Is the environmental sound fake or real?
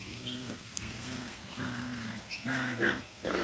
fake